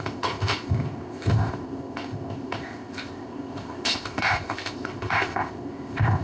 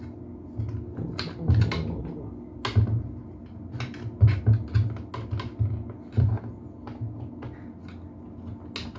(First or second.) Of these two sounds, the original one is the second